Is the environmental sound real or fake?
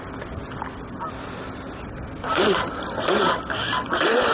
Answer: real